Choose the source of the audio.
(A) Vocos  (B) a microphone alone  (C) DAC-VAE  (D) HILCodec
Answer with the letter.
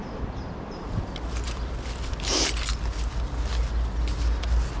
B